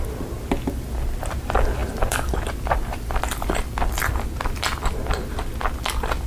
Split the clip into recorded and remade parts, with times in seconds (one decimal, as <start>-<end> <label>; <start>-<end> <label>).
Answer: 0.0-1.8 recorded; 1.8-4.1 remade; 4.1-6.3 recorded